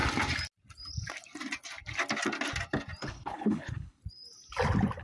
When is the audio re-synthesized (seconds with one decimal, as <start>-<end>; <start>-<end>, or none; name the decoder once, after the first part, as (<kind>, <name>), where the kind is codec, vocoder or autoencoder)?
3.0-4.0 (codec, HILCodec)